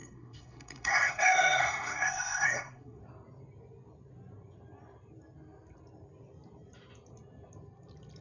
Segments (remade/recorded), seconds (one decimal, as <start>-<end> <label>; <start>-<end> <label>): 0.0-3.0 remade; 3.0-8.2 recorded